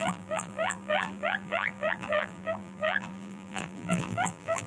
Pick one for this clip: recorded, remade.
remade